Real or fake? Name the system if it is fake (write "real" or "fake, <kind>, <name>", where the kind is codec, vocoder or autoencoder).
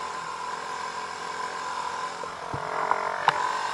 real